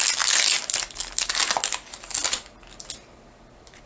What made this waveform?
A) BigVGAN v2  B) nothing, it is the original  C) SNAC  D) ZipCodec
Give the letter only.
B